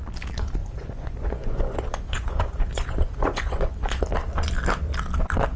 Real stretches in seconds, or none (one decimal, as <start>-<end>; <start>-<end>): 0.0-0.6; 4.0-5.6